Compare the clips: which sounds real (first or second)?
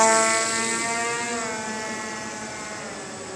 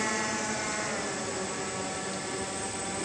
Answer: first